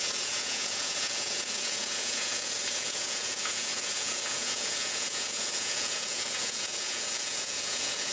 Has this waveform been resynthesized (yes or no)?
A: yes